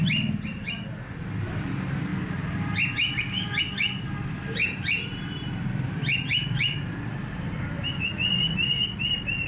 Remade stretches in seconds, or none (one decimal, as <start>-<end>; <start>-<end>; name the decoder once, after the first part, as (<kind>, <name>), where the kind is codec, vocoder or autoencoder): 0.0-2.1 (vocoder, BigVGAN v2); 3.6-9.5